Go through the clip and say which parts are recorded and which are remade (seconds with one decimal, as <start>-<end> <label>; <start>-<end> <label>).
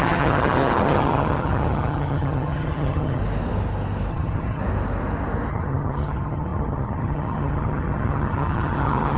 0.0-3.2 remade; 3.2-4.1 recorded; 4.1-4.6 remade; 4.6-5.5 recorded; 5.5-9.2 remade